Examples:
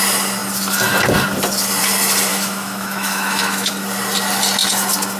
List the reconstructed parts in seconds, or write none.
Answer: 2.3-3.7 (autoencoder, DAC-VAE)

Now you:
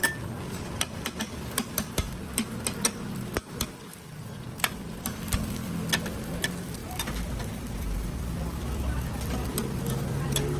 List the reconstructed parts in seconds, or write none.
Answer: none

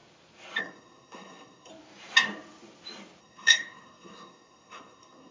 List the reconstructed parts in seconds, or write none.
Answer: 0.6-1.7 (codec, SNAC); 3.2-5.3

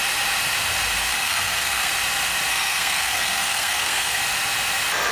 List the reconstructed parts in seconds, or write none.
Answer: 1.1-1.9 (codec, SNAC); 2.5-4.2

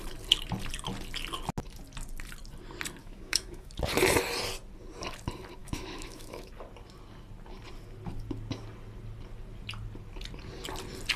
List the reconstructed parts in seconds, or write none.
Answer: 3.0-3.7 (autoencoder, DAC-VAE); 5.6-6.5